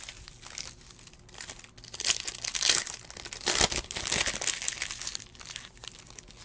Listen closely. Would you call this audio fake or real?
real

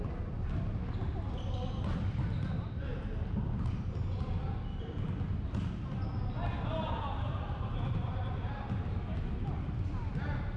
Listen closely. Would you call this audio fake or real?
real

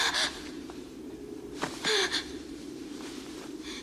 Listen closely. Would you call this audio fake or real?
fake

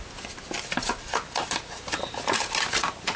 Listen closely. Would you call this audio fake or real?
real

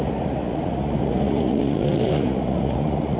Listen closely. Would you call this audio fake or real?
fake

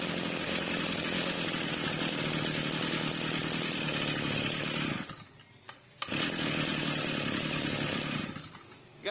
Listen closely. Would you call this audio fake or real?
real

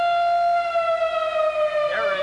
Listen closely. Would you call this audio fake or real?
real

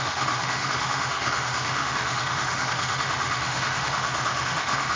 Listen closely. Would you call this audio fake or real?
fake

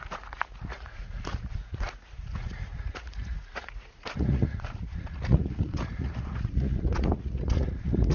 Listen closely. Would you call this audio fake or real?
fake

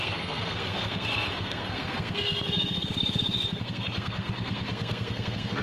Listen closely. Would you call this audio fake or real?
fake